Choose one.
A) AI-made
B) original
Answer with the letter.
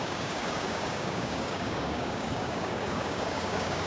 A